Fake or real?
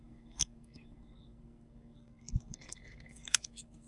fake